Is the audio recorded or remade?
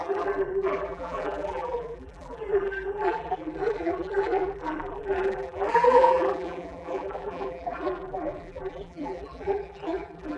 remade